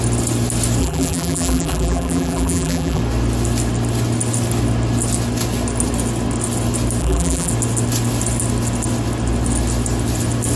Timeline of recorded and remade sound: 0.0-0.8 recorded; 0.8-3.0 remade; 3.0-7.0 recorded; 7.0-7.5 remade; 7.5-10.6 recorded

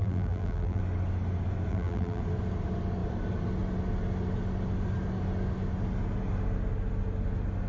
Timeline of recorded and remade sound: 0.0-0.8 remade; 0.8-1.7 recorded; 1.7-2.2 remade; 2.2-7.7 recorded

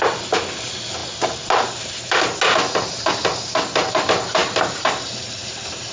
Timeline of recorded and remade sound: 0.0-4.4 recorded; 4.4-5.9 remade

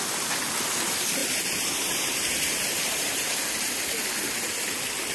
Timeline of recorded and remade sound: 0.0-1.2 recorded; 1.2-3.5 remade; 3.5-5.1 recorded

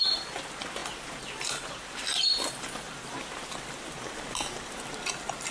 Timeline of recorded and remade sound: 0.0-5.5 remade

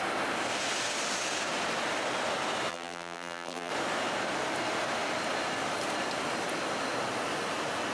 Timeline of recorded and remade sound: 0.0-2.7 recorded; 2.7-3.7 remade; 3.7-7.9 recorded